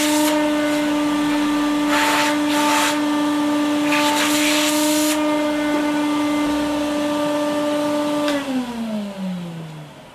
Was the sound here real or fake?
real